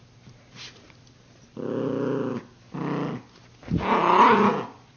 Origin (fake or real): real